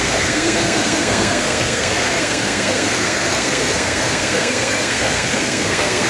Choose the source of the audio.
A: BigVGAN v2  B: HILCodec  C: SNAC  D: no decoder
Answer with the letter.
C